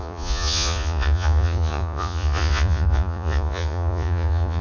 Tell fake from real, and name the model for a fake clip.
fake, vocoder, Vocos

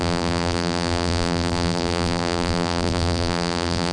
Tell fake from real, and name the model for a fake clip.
fake, vocoder, BigVGAN v2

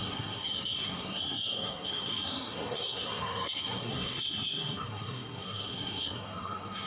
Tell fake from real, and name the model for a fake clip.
fake, codec, SNAC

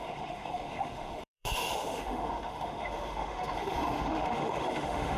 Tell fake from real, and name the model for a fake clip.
fake, autoencoder, DAC-VAE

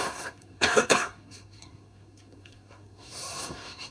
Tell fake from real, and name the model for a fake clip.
fake, codec, SNAC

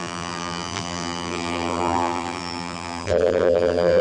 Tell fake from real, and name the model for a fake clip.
fake, vocoder, BigVGAN v2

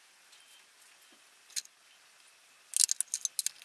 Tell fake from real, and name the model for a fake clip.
real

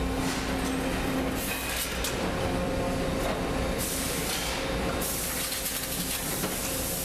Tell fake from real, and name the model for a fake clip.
real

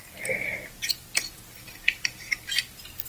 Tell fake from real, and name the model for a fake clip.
fake, vocoder, BigVGAN v2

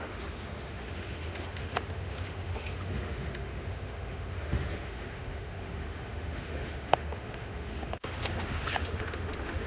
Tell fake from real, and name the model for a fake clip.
fake, autoencoder, DAC-VAE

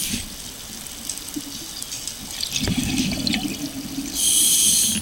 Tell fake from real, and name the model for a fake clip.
real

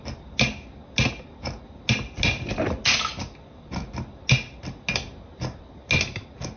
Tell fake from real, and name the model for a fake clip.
real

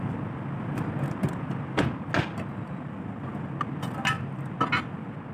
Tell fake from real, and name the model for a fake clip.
real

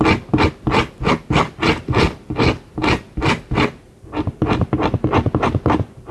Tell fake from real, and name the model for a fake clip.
real